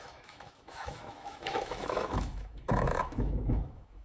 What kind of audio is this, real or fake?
fake